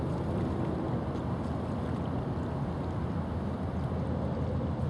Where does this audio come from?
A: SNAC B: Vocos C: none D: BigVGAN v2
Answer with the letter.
C